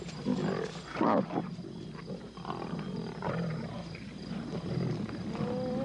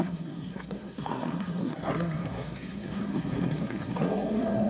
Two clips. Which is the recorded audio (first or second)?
first